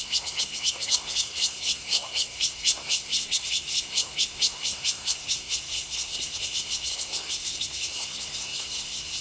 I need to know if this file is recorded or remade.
remade